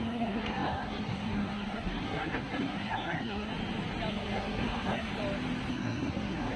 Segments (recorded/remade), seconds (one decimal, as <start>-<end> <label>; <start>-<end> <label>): 0.0-3.5 remade; 3.5-4.1 recorded; 4.1-5.1 remade; 5.1-5.7 recorded; 5.7-6.6 remade